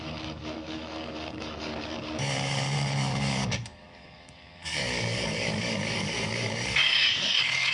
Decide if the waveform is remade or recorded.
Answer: remade